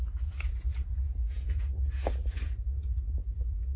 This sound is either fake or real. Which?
fake